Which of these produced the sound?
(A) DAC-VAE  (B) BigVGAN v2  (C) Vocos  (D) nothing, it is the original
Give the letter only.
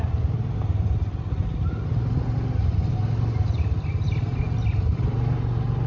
D